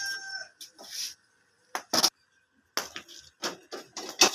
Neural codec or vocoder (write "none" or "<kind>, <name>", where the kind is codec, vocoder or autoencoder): none